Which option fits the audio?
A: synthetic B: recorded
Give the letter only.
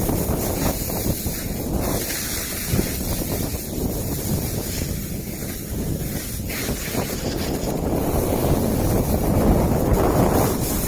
B